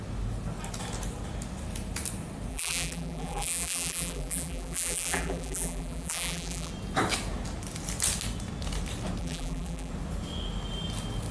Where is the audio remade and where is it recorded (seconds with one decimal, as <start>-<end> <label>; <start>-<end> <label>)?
0.0-2.5 recorded; 2.5-6.7 remade; 6.7-9.2 recorded; 9.2-9.9 remade; 9.9-11.3 recorded